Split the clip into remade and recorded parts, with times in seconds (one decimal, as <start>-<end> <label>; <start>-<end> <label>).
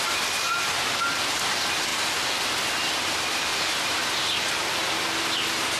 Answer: 0.0-3.5 recorded; 3.5-4.7 remade; 4.7-5.8 recorded